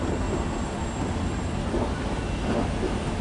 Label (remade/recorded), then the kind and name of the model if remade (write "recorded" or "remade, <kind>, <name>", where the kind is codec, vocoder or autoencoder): recorded